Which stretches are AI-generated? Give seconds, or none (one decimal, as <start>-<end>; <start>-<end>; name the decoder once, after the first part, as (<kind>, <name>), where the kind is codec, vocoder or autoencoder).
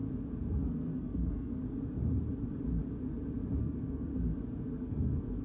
0.5-1.5 (codec, SNAC); 3.6-4.1; 4.7-5.4